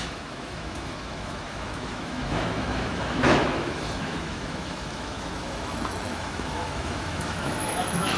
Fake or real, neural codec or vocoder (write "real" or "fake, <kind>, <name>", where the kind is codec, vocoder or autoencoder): fake, autoencoder, DAC-VAE